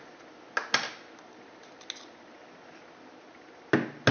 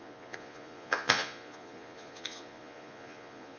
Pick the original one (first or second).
first